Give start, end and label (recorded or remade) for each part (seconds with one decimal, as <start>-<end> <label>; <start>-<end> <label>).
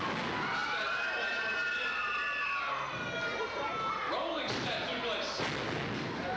0.0-6.4 recorded